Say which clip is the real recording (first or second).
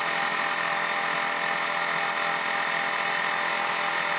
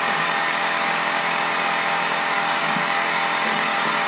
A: first